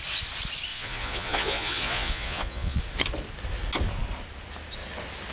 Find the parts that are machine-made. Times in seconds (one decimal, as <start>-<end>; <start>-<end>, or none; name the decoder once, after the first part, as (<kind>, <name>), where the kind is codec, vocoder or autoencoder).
0.7-2.8 (vocoder, Vocos)